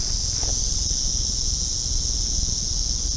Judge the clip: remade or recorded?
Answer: recorded